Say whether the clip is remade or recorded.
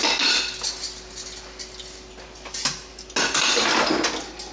recorded